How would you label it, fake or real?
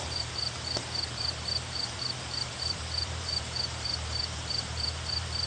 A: fake